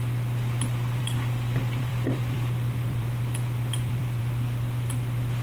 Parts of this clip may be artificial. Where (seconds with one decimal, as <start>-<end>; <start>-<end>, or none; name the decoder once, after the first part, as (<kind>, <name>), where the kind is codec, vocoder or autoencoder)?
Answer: 1.0-4.2 (vocoder, BigVGAN v2)